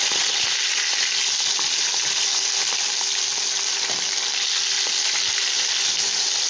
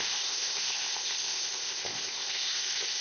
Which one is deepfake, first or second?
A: second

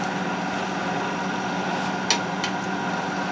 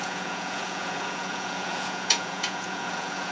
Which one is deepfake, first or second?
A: second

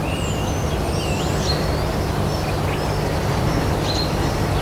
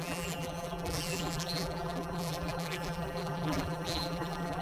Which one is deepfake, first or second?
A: second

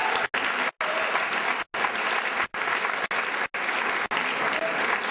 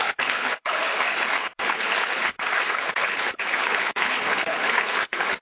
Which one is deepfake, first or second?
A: second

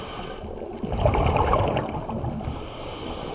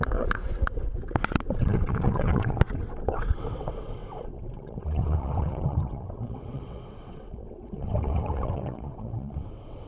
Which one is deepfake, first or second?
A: second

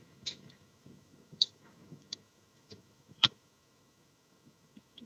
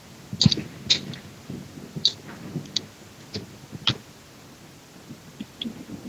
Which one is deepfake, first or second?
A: first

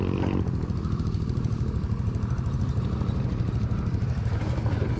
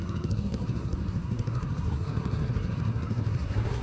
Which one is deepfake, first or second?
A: second